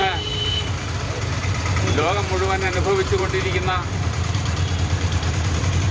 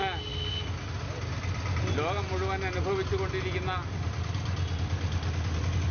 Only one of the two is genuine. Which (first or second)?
second